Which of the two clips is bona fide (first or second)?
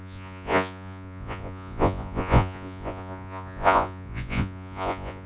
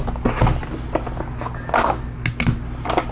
second